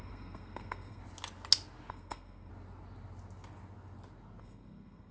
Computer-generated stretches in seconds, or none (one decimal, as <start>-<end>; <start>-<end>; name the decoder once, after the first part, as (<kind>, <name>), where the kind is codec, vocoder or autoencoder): 0.0-1.0 (codec, SNAC); 1.9-2.5; 4.4-5.1